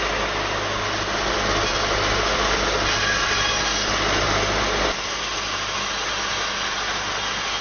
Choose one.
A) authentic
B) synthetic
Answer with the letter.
A